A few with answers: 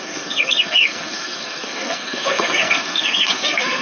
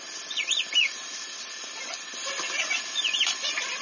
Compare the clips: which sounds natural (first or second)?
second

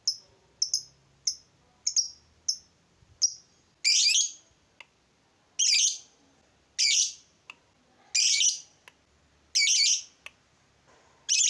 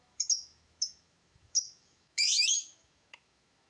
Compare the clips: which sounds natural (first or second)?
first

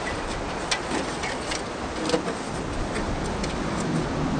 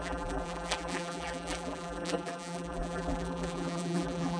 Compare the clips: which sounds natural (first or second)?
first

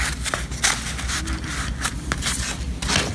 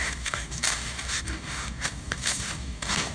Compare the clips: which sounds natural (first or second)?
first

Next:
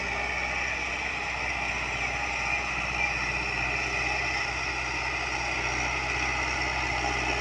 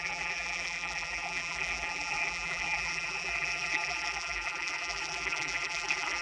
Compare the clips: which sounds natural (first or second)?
first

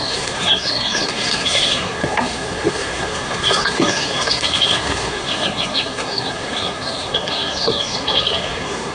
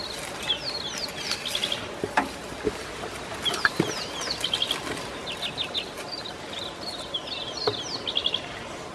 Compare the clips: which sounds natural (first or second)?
second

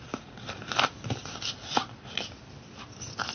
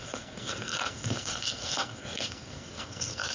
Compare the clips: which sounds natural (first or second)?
first